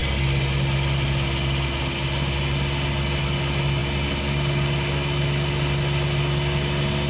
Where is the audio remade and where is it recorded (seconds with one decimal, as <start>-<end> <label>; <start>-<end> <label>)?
0.0-7.1 recorded